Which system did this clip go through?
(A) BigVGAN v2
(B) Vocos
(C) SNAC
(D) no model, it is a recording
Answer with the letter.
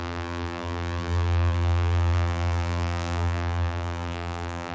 A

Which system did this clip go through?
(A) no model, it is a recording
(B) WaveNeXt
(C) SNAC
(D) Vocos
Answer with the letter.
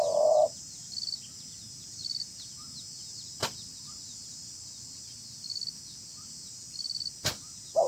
A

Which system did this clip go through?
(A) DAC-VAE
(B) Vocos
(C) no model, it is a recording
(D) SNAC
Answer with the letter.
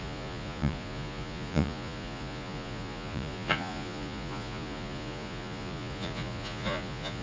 B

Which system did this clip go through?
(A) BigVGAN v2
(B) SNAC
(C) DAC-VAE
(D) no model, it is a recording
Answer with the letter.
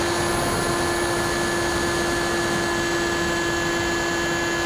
D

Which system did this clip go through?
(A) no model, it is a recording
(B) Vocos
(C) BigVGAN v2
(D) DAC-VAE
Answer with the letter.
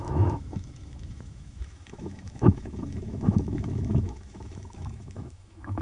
D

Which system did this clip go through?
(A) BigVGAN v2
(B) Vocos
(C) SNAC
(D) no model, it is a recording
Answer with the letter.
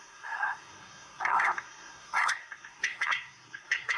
C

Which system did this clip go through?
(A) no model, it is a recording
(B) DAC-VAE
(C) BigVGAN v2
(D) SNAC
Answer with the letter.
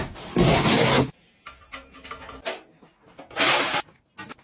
A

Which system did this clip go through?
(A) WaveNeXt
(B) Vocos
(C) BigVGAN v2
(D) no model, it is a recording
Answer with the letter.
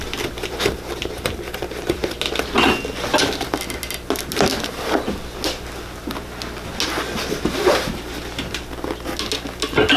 D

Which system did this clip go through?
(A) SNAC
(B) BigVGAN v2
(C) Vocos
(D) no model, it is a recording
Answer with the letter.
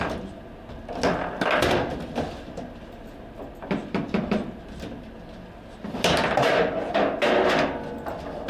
D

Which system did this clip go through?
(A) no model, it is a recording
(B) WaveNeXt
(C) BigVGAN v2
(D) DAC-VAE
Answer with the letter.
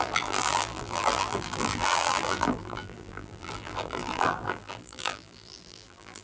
C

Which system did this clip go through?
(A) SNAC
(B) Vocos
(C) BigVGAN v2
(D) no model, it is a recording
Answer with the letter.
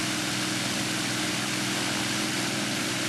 D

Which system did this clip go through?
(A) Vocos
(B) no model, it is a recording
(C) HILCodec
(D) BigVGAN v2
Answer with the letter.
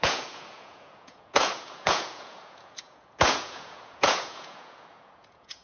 A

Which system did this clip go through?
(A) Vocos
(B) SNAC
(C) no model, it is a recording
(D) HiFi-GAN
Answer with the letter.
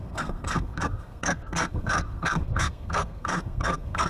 B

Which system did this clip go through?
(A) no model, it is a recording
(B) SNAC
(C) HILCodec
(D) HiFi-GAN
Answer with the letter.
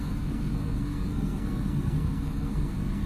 B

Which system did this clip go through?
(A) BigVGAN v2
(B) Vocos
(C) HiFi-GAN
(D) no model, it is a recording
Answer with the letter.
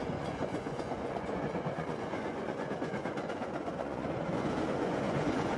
B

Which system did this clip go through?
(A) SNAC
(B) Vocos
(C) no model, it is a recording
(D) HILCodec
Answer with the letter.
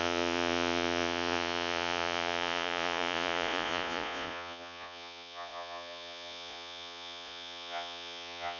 B